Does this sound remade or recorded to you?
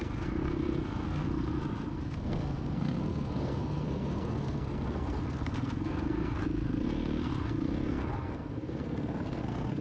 remade